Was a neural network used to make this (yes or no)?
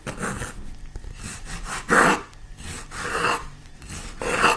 no